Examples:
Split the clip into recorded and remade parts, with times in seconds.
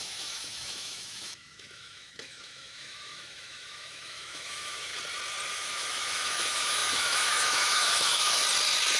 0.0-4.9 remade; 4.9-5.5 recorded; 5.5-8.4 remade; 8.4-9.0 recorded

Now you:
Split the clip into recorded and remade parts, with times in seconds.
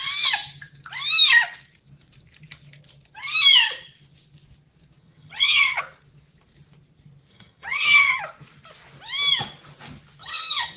0.0-5.0 recorded; 5.0-5.8 remade; 5.8-7.3 recorded; 7.3-8.2 remade; 8.2-10.2 recorded; 10.2-10.8 remade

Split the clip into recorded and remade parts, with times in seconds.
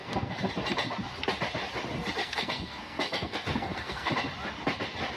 0.0-0.5 remade; 0.5-2.2 recorded; 2.2-4.1 remade; 4.1-5.2 recorded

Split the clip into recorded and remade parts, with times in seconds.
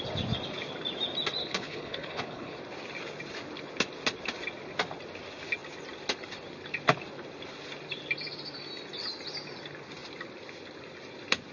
0.0-1.4 recorded; 1.4-2.6 remade; 2.6-11.5 recorded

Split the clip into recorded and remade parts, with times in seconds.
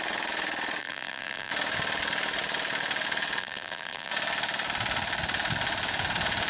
0.0-0.8 recorded; 0.8-1.5 remade; 1.5-3.4 recorded; 3.4-4.1 remade; 4.1-6.5 recorded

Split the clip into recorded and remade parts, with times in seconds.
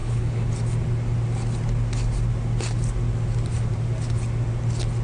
0.0-0.5 remade; 0.5-5.0 recorded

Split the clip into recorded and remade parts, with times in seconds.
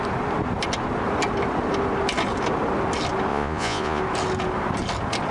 0.0-3.3 recorded; 3.3-4.0 remade; 4.0-5.3 recorded